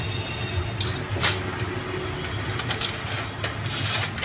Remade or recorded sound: recorded